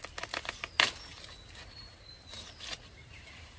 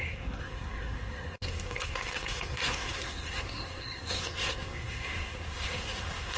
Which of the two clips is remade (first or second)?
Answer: second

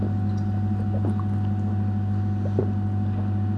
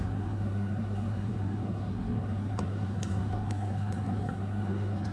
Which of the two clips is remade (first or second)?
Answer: second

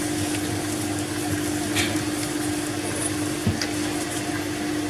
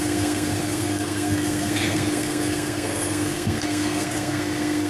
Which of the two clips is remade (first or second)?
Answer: second